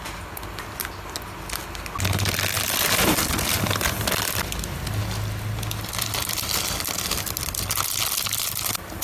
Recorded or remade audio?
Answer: recorded